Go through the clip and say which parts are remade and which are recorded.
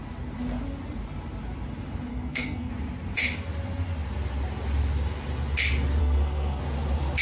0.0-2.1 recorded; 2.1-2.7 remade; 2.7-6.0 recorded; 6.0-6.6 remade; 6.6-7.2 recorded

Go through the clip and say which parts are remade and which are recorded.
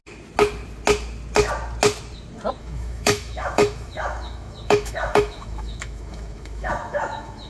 0.0-2.6 recorded; 2.6-7.5 remade